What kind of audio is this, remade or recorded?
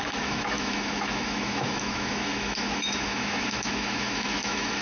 remade